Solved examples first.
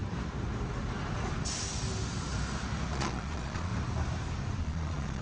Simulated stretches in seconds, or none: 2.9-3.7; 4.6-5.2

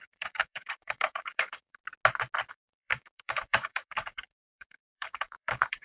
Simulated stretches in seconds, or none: 0.0-1.8; 2.5-5.8

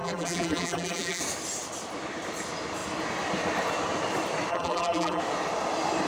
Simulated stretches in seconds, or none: 0.0-1.2; 4.5-5.2